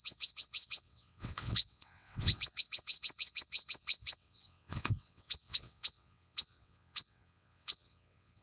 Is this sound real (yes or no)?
no